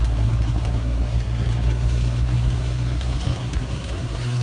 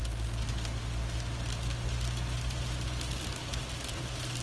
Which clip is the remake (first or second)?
first